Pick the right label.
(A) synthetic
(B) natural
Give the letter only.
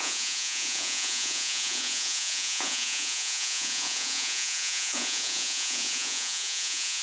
A